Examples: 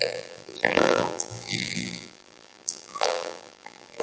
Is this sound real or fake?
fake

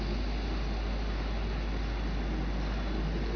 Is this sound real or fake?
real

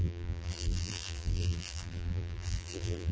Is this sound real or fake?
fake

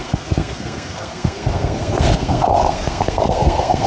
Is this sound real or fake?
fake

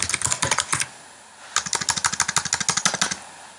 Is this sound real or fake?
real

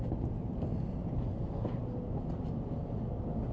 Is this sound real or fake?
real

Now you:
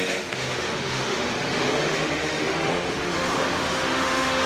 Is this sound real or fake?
fake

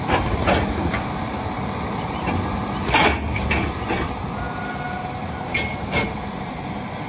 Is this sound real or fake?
real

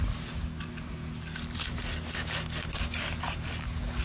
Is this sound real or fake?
real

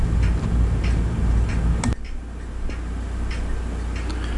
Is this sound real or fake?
real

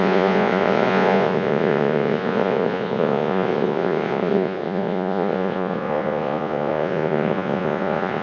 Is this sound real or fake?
fake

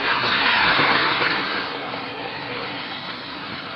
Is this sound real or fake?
fake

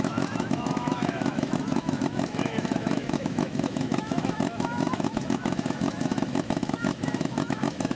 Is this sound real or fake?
fake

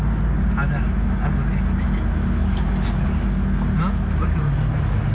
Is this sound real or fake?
real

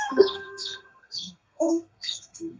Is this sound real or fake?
fake